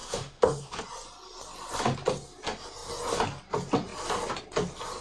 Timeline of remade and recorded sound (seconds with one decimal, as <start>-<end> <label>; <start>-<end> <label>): 0.0-0.8 remade; 0.8-5.0 recorded